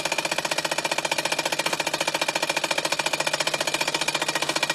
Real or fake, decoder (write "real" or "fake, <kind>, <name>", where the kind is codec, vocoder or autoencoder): real